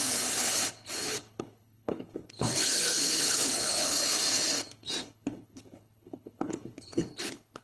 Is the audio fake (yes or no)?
yes